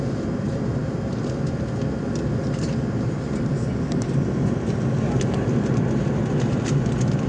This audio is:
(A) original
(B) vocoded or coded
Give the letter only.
A